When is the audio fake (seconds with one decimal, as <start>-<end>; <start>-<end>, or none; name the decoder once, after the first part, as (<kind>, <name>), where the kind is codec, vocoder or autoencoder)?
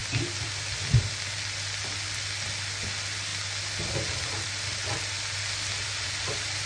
none